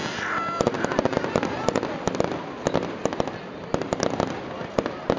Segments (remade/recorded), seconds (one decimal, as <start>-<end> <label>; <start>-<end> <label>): 0.0-5.2 recorded